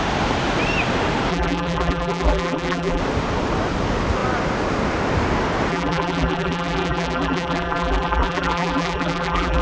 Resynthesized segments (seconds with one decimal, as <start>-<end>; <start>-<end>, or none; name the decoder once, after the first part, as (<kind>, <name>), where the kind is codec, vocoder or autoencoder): 1.3-3.0 (vocoder, BigVGAN v2); 5.7-9.6